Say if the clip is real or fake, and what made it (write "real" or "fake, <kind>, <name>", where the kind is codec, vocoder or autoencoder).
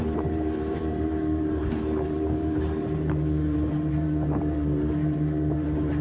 fake, vocoder, BigVGAN v2